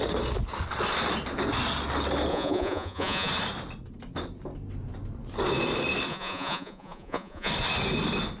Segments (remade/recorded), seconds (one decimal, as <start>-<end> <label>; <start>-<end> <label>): 0.0-2.3 recorded; 2.3-3.3 remade; 3.3-6.1 recorded; 6.1-7.5 remade; 7.5-8.4 recorded